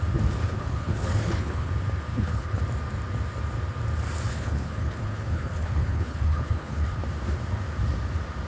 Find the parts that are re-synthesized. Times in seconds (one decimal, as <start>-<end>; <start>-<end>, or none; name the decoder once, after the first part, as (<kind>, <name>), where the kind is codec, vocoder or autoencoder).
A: 0.4-1.7 (codec, HILCodec); 2.1-2.6; 4.3-7.0